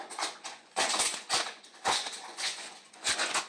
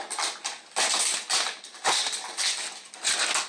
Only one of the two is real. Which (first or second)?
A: second